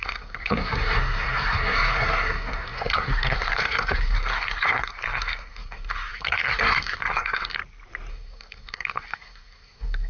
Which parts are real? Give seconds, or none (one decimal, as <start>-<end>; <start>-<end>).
7.6-8.1